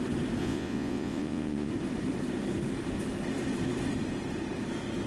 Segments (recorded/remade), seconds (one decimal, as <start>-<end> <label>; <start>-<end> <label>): 0.0-0.4 recorded; 0.4-1.7 remade; 1.7-5.1 recorded